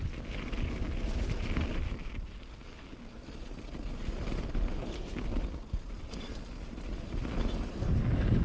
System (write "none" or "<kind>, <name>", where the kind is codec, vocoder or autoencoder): none